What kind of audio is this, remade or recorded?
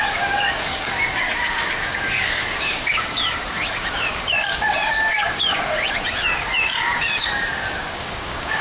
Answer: remade